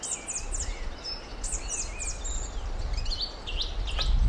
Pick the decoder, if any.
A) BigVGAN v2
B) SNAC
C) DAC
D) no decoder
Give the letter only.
D